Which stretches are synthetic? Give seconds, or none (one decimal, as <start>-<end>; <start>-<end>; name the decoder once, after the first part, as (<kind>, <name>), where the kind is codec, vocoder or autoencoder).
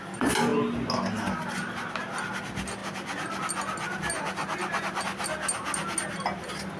none